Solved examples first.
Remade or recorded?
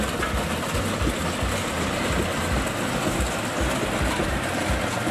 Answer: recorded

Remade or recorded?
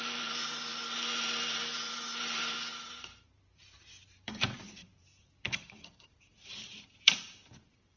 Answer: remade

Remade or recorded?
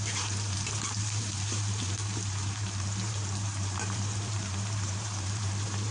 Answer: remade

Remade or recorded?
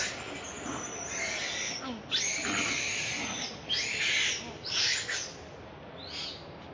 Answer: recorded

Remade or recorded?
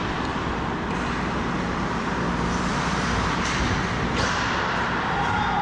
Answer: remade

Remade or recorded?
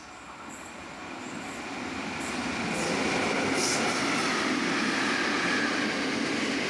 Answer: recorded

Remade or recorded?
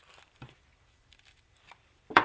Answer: remade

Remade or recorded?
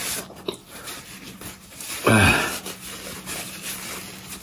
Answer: recorded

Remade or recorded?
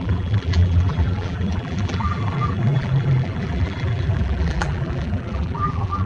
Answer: remade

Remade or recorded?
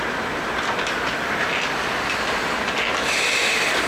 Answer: recorded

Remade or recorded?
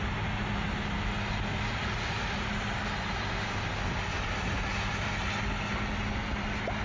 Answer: recorded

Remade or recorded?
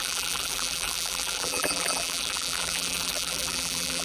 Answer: remade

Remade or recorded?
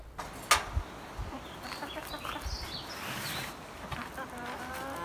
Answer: recorded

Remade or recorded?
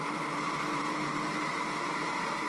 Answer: remade